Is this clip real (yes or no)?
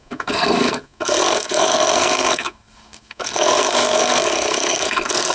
no